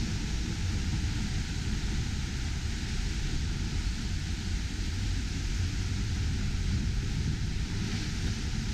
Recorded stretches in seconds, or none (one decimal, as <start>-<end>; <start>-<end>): 0.0-8.7